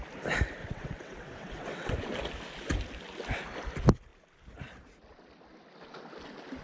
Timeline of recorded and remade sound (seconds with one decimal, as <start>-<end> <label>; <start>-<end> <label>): 0.0-0.6 recorded; 0.6-1.9 remade; 1.9-6.6 recorded